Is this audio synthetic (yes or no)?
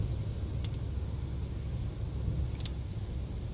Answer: no